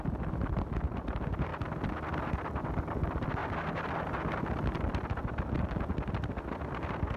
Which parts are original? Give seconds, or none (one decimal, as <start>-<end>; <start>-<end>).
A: 1.5-2.8; 3.4-4.5

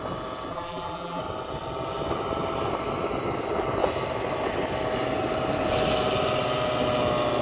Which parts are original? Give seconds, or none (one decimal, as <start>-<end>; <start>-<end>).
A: 0.0-0.5; 1.2-7.4

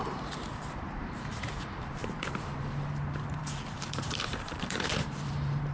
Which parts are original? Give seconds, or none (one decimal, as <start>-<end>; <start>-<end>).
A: none

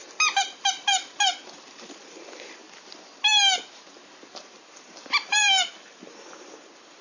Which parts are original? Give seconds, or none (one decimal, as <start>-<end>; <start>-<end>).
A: 2.6-3.9

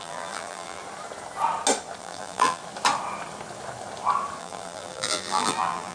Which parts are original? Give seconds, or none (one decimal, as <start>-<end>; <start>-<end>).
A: 0.8-2.0; 2.6-4.4

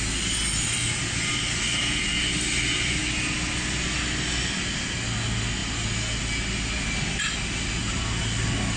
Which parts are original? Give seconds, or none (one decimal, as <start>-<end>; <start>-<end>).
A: 0.0-8.8

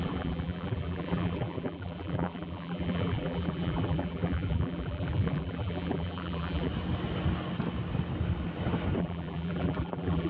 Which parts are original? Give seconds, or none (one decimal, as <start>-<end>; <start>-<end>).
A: 6.7-9.0

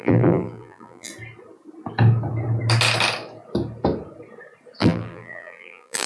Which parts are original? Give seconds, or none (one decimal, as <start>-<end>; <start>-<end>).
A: 1.1-4.8